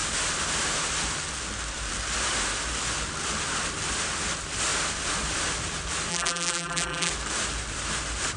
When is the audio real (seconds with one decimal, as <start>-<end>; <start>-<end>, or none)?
0.0-6.1; 7.1-8.4